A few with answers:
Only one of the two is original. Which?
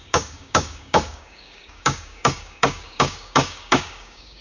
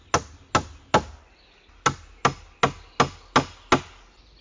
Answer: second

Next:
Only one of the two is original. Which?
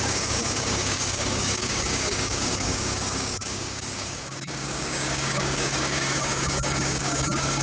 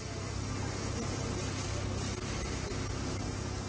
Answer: second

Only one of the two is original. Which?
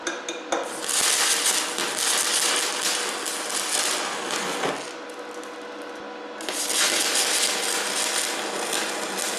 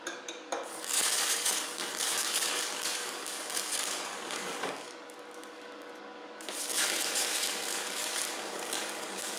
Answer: first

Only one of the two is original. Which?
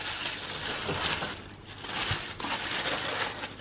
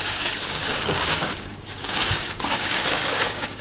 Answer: first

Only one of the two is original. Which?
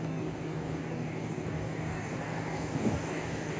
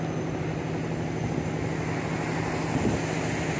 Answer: second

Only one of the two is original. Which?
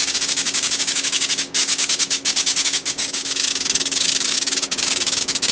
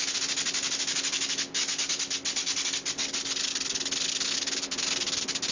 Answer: second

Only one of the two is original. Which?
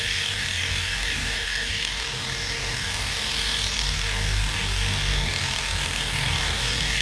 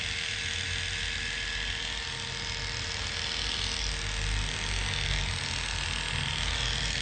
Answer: second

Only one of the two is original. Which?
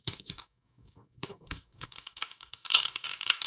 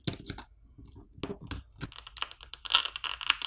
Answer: second